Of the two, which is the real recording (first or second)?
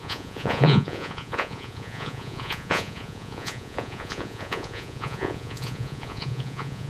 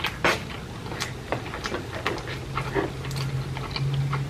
second